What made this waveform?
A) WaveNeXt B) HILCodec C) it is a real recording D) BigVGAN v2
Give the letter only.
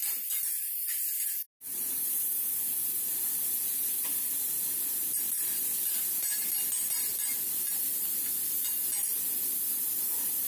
C